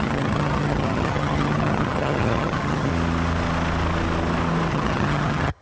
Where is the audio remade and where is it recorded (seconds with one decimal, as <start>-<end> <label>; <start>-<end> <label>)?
0.0-2.9 remade; 2.9-4.7 recorded; 4.7-5.6 remade